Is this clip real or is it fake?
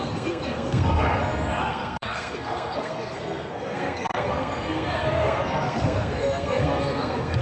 fake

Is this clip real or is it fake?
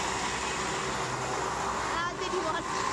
real